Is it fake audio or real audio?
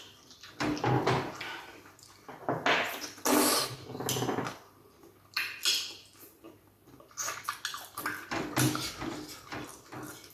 real